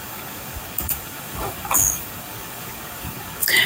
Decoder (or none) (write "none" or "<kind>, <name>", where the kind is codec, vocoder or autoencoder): codec, DAC